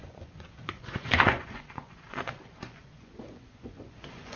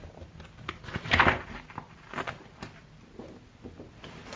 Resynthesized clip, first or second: first